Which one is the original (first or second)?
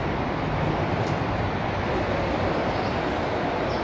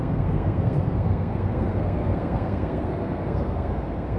first